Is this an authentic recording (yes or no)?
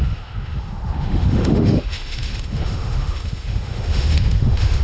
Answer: no